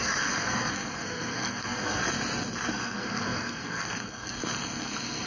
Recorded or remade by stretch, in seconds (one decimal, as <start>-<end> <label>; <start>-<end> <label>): 0.0-2.0 remade; 2.0-2.7 recorded; 2.7-5.3 remade

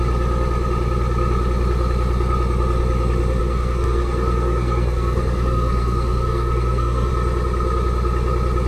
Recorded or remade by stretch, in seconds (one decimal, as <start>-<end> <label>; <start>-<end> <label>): 0.0-3.4 recorded; 3.4-7.1 remade; 7.1-8.7 recorded

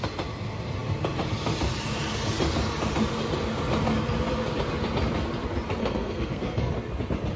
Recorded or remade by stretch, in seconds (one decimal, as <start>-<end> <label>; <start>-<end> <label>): 0.0-5.8 recorded; 5.8-6.7 remade; 6.7-7.4 recorded

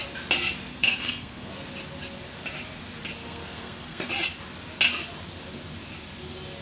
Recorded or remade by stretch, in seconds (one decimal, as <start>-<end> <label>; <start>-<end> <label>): 0.0-0.7 recorded; 0.7-1.5 remade; 1.5-3.2 recorded; 3.2-4.1 remade; 4.1-6.6 recorded

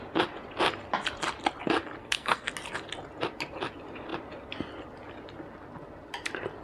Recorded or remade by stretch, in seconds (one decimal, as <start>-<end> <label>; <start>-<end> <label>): 0.0-2.0 recorded; 2.0-2.5 remade; 2.5-6.6 recorded

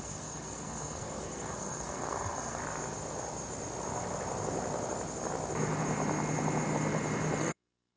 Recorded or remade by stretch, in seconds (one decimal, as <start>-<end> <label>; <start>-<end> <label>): 0.0-2.6 remade; 2.6-7.4 recorded; 7.4-8.0 remade

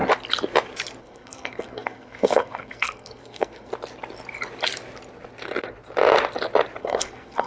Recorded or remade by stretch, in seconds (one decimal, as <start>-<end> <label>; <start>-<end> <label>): 0.0-1.0 recorded; 1.0-3.7 remade; 3.7-6.8 recorded; 6.8-7.5 remade